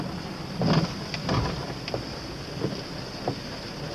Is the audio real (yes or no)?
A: yes